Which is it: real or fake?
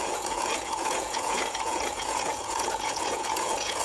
fake